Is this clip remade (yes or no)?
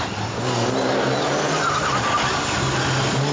no